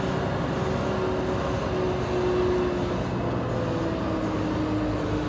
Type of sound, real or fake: real